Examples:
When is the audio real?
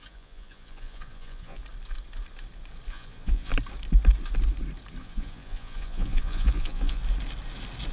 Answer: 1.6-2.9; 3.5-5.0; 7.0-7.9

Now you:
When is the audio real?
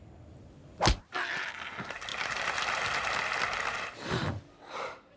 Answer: 0.0-2.1; 2.7-5.2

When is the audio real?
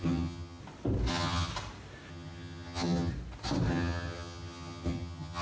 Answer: 0.6-1.1; 1.5-2.1; 3.1-3.7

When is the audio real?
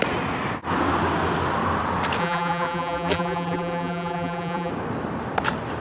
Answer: 0.0-2.2; 4.7-5.8